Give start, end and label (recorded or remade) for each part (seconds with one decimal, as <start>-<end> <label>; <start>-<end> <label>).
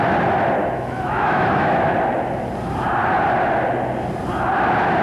0.0-0.6 recorded; 0.6-1.9 remade; 1.9-5.0 recorded